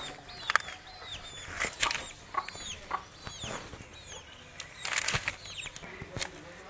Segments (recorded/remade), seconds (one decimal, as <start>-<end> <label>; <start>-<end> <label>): 0.0-6.7 recorded